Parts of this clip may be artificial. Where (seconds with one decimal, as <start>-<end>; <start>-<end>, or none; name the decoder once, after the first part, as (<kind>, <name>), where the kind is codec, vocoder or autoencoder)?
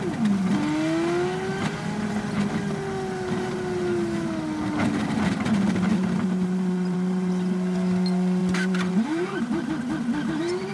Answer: 5.9-7.3 (vocoder, BigVGAN v2); 8.4-9.6